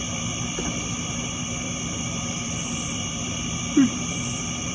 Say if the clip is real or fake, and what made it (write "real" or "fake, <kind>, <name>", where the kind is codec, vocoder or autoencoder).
fake, vocoder, BigVGAN v2